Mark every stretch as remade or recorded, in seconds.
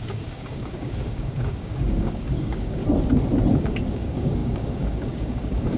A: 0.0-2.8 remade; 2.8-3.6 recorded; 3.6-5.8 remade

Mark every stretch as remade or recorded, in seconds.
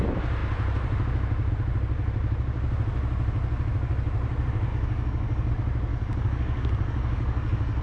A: 0.0-4.7 recorded; 4.7-5.5 remade; 5.5-5.9 recorded; 5.9-7.8 remade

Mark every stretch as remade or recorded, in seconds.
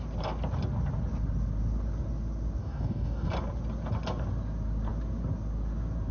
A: 0.0-2.6 recorded; 2.6-3.3 remade; 3.3-6.1 recorded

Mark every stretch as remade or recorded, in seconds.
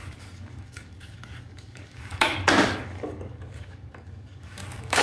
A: 0.0-5.0 remade